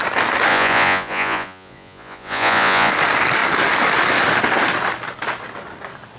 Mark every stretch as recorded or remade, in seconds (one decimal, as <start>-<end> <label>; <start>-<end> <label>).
0.0-0.5 recorded; 0.5-2.9 remade; 2.9-6.2 recorded